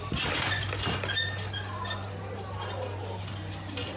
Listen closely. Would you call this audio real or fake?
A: real